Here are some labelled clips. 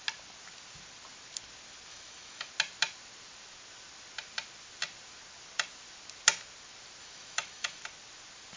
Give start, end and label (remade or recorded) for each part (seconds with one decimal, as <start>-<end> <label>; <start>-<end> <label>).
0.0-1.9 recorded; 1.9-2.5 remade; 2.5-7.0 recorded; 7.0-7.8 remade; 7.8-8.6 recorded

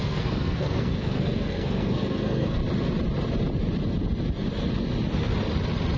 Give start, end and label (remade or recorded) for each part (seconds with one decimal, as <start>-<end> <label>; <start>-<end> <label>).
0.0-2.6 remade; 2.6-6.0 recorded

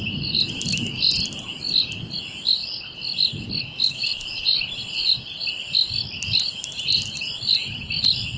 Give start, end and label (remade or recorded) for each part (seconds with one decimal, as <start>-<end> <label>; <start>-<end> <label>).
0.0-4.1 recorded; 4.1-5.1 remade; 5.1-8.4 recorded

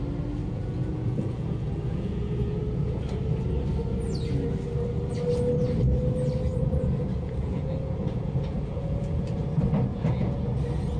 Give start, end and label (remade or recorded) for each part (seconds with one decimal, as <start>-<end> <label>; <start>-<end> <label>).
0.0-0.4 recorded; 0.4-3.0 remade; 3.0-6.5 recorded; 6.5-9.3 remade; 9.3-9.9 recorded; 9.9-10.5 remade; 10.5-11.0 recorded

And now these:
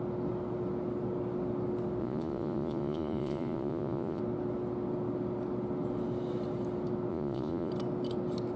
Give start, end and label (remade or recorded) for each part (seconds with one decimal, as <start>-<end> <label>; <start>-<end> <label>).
0.0-2.0 recorded; 2.0-4.2 remade; 4.2-7.1 recorded; 7.1-7.7 remade; 7.7-8.6 recorded

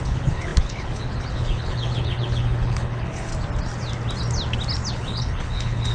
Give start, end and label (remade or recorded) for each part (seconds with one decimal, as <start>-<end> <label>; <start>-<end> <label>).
0.0-3.3 remade; 3.3-4.9 recorded; 4.9-5.9 remade

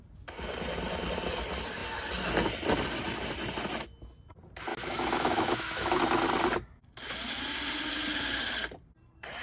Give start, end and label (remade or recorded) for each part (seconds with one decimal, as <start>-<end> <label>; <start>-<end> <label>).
0.0-4.7 recorded; 4.7-6.0 remade; 6.0-9.4 recorded